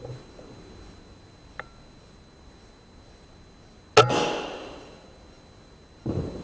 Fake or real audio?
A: real